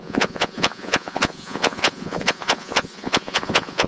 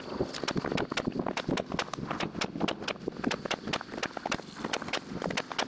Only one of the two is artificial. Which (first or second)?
first